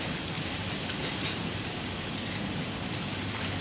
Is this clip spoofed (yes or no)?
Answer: yes